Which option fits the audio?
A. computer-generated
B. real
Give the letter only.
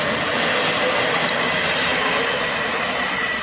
B